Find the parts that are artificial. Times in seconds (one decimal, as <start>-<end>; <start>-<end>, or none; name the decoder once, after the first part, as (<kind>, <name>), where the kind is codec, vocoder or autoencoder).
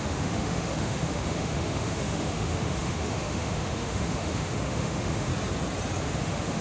0.0-5.3 (autoencoder, DAC-VAE); 6.0-6.6